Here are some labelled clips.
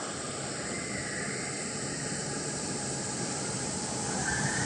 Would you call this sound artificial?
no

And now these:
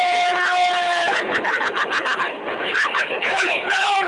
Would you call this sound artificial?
yes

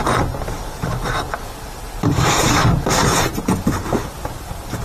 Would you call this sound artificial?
no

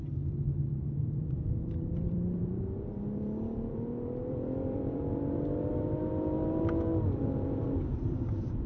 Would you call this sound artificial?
yes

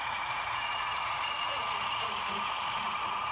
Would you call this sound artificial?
yes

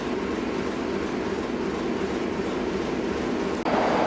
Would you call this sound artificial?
no